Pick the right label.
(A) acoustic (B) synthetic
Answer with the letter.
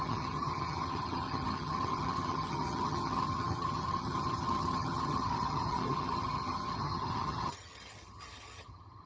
B